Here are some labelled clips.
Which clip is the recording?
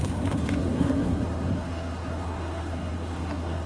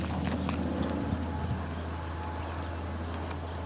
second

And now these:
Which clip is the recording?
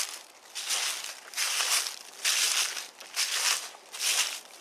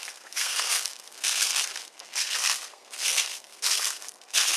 first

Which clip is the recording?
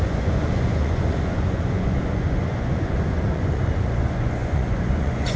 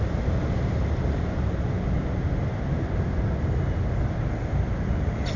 second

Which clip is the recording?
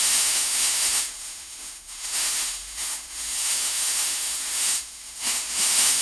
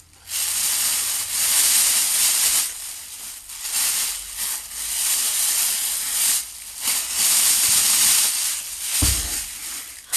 second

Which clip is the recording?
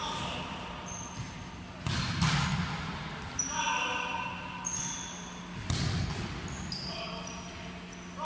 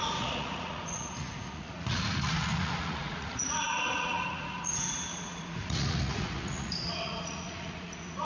first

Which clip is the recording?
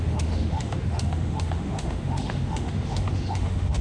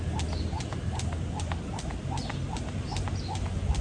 second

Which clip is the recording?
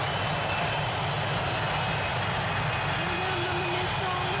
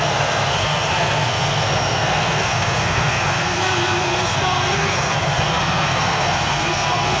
first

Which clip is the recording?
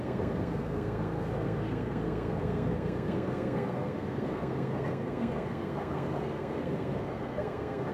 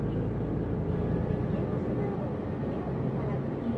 second